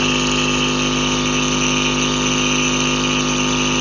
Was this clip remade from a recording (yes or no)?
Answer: no